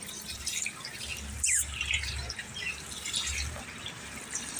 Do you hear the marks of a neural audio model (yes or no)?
yes